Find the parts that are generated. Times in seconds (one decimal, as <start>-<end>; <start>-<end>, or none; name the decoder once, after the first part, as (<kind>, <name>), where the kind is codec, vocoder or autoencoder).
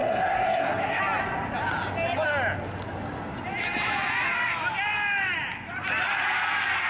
0.0-1.0 (codec, SNAC)